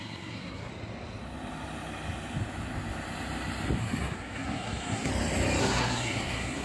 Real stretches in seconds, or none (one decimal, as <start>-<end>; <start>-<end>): 0.7-3.8; 5.1-5.6